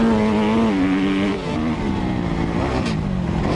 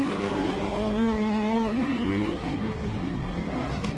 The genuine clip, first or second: first